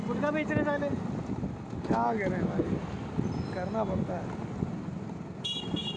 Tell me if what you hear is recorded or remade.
recorded